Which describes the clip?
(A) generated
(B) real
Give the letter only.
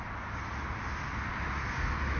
B